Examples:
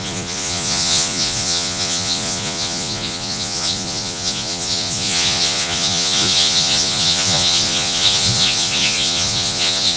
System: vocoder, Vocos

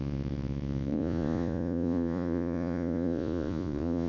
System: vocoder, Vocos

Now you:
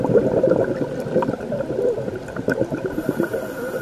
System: none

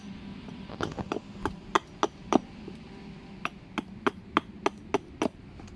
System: none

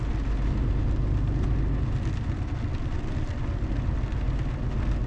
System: none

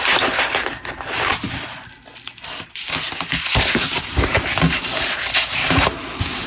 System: none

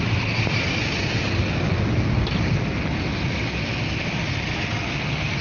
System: none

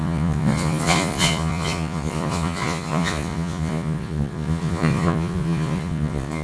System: vocoder, Vocos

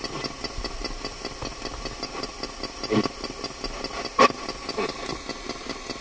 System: none